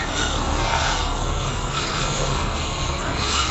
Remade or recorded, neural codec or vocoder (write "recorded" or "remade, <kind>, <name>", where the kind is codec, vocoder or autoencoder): remade, codec, SNAC